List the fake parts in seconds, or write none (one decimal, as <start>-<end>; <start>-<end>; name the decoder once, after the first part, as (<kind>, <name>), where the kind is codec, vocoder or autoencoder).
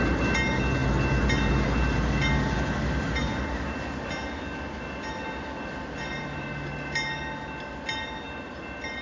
none